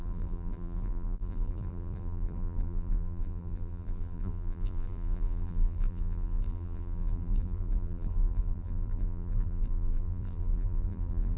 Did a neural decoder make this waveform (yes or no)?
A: yes